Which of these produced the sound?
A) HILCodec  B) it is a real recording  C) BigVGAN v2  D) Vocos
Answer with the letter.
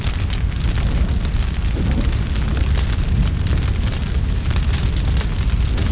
B